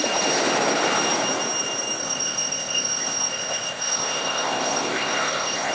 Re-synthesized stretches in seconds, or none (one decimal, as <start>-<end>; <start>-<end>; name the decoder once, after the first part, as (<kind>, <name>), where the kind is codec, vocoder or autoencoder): 2.0-5.7 (codec, ZipCodec)